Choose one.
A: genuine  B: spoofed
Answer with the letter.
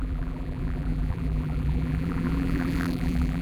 B